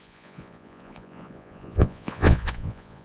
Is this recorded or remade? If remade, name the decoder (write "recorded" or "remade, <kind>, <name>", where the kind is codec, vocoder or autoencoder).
remade, vocoder, Vocos